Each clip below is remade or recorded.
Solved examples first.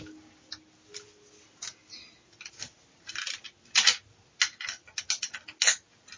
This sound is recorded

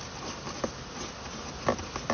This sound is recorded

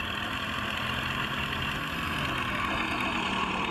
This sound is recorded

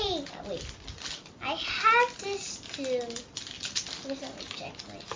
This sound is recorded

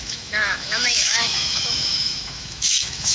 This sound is remade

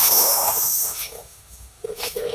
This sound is remade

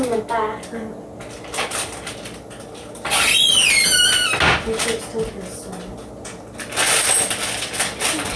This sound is recorded